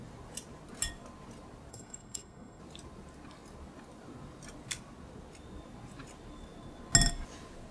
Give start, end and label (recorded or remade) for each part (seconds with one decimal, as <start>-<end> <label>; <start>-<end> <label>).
0.0-1.7 recorded; 1.7-2.6 remade; 2.6-7.7 recorded